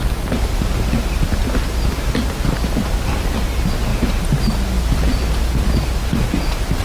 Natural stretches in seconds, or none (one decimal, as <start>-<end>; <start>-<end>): 0.0-6.8